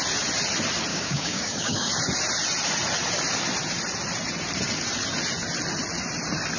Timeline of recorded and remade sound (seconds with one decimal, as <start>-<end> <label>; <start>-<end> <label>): 0.0-0.9 recorded; 0.9-1.9 remade; 1.9-6.6 recorded